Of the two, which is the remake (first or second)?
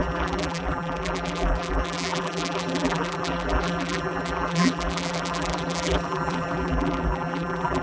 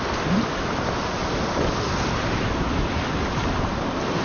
first